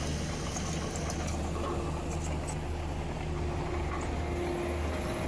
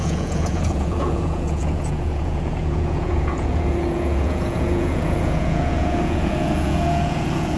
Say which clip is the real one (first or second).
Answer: first